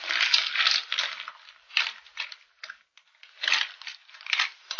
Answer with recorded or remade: recorded